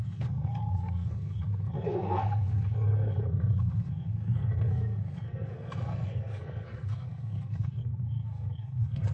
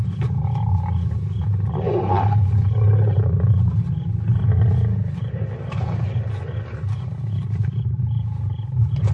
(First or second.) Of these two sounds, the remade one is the first